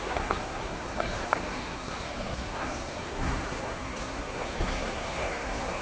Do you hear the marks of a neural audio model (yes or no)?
yes